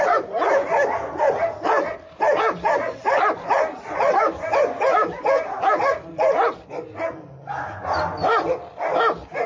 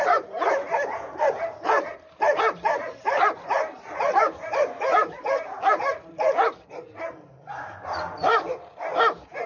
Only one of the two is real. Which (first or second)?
first